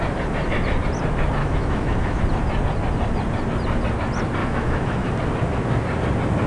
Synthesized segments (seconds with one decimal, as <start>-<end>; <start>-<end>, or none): 1.4-2.2; 4.4-5.1